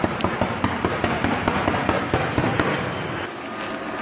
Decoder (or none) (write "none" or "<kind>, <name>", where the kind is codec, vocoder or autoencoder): none